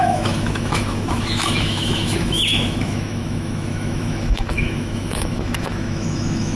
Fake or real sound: fake